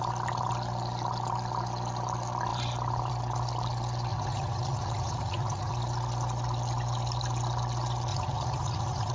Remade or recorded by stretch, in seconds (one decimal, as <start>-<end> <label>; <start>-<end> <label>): 0.0-4.1 recorded; 4.1-5.7 remade; 5.7-8.1 recorded; 8.1-9.1 remade